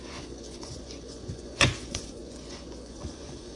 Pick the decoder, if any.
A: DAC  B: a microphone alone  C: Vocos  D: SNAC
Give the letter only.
C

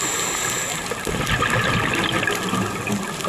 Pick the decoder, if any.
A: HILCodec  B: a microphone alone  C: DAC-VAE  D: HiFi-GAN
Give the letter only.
B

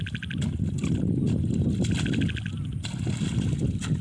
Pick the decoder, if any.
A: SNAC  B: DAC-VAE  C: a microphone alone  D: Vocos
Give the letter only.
C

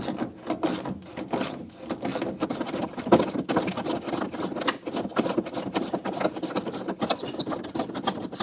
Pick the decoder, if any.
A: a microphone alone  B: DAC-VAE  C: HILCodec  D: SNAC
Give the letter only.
A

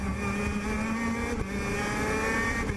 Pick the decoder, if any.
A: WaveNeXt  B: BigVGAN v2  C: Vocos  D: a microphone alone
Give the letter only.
D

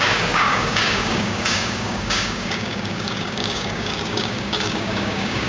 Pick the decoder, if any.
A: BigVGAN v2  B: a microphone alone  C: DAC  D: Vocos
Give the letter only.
C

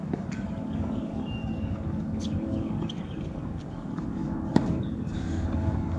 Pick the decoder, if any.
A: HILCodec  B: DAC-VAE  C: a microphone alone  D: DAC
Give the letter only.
D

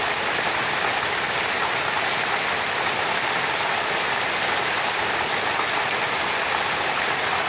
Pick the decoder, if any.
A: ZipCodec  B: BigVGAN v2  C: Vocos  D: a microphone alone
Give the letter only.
D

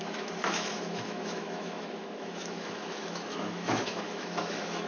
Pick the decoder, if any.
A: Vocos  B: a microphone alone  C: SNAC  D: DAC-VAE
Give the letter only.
D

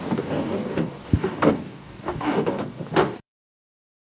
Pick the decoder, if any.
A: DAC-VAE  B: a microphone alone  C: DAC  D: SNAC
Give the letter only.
C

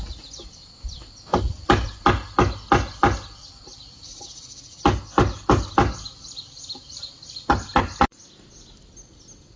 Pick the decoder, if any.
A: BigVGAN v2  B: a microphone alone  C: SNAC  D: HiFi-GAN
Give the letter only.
B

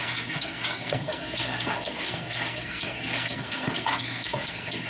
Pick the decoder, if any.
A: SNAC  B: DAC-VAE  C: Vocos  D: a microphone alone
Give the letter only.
A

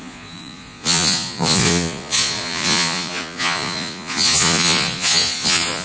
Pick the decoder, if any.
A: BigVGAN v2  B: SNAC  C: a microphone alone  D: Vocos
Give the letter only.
D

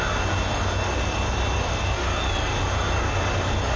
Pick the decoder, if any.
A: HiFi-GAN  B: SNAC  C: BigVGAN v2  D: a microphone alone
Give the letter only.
D